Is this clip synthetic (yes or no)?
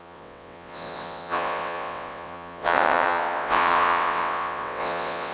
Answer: yes